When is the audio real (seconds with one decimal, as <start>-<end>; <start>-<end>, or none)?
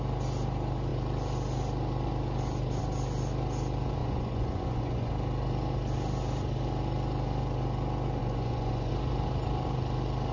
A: 0.0-4.0; 5.1-8.2; 8.9-10.3